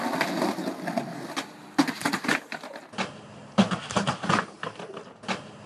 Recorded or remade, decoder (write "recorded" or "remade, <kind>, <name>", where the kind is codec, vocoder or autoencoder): recorded